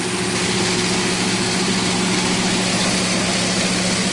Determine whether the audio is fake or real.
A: real